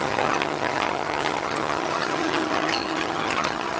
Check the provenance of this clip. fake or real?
fake